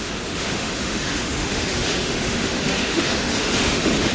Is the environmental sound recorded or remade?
remade